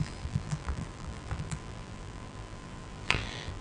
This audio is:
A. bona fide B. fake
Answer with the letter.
B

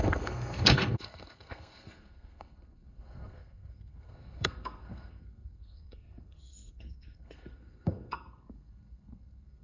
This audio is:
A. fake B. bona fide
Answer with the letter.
A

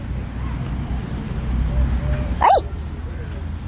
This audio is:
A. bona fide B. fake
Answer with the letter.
A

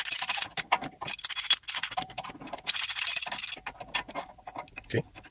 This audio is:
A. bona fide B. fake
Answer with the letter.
A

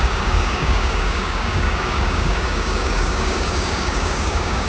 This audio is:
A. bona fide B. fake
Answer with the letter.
B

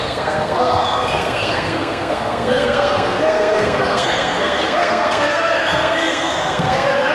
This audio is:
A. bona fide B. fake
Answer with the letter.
B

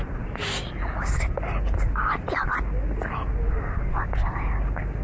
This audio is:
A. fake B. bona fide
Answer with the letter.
B